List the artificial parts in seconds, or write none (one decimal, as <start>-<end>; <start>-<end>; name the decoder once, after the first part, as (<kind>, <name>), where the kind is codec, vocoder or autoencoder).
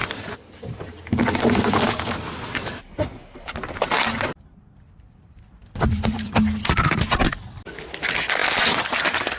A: 0.0-2.6 (vocoder, BigVGAN v2); 5.6-6.3